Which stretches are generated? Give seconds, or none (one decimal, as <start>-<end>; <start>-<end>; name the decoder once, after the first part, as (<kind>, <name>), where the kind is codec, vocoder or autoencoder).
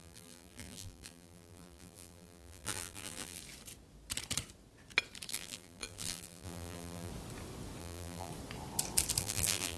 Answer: 0.0-3.4 (vocoder, BigVGAN v2); 5.3-7.1; 7.8-8.3; 9.2-9.8